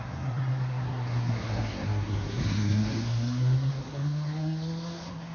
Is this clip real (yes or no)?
no